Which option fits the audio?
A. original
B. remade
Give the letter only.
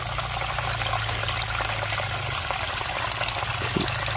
A